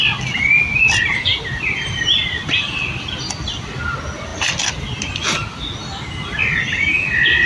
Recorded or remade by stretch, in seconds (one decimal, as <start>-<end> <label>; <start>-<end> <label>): 0.0-7.5 recorded